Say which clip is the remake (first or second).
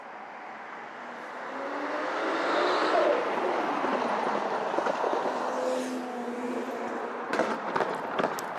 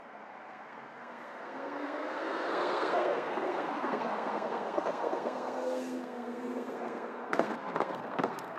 second